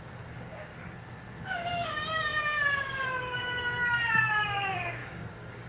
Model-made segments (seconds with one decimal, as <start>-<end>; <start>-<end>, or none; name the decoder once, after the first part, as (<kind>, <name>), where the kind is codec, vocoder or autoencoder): 0.0-0.7 (codec, DAC); 1.3-5.7